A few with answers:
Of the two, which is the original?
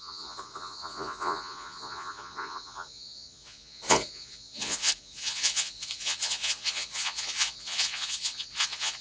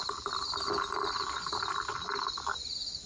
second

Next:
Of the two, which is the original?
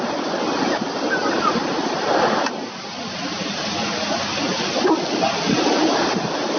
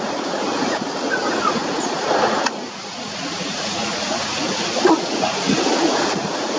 first